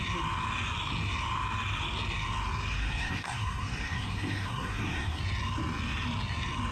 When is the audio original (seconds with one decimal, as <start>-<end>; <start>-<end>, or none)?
0.0-2.8; 5.2-6.7